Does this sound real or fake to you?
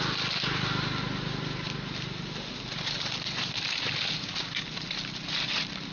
real